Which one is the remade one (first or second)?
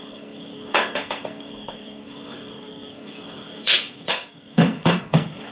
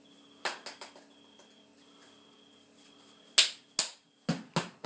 first